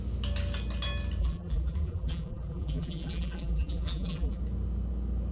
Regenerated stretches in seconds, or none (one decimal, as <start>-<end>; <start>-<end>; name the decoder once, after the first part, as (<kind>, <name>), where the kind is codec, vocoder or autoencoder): 1.2-4.4 (vocoder, BigVGAN v2)